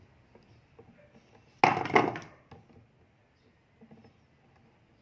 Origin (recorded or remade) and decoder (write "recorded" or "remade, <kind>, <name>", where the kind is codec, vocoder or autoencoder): recorded